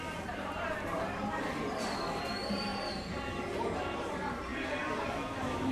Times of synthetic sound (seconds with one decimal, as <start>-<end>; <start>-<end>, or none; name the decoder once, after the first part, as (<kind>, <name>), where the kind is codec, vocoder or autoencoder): 0.0-5.7 (vocoder, BigVGAN v2)